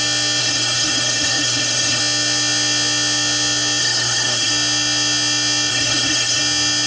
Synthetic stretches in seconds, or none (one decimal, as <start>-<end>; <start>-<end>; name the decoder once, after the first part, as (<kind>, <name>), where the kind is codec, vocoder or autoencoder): 0.4-2.0 (codec, SNAC); 3.8-4.5; 5.7-6.4